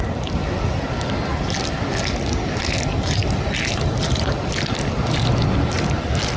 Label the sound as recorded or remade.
recorded